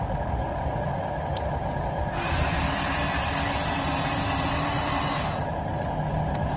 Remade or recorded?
recorded